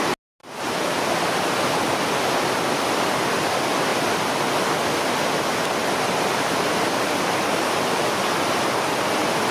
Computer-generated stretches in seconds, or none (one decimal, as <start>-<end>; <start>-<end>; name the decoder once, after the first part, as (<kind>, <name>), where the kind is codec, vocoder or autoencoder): none